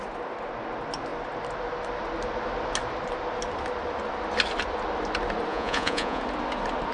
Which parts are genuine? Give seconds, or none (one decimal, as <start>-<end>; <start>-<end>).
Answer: 0.0-5.5; 6.2-6.9